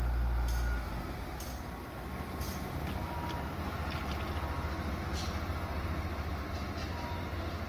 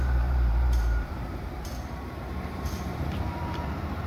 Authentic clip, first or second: first